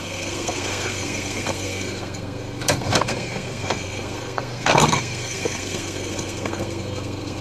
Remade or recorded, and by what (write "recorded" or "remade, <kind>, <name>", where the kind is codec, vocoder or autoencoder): remade, codec, SNAC